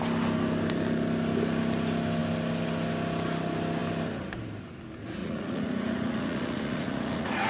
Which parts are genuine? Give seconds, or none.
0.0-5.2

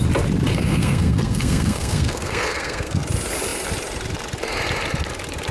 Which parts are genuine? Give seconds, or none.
0.0-0.5; 3.0-5.5

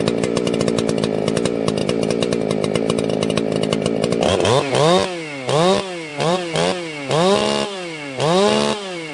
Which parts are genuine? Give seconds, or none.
0.0-6.1

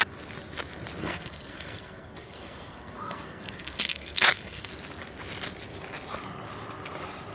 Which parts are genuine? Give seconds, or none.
0.0-1.0; 4.7-7.3

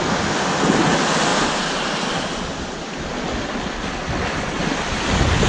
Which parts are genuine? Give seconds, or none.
0.0-5.5

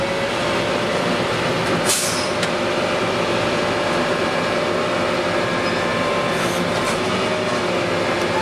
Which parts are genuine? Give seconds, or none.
0.0-8.4

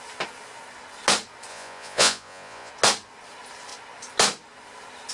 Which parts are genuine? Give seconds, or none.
0.0-1.5; 2.7-5.1

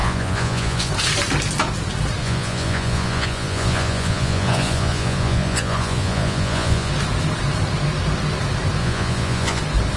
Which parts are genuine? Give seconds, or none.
0.9-2.2; 6.9-8.8; 9.6-10.0